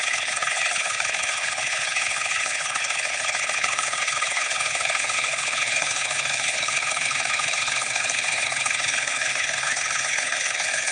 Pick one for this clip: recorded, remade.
remade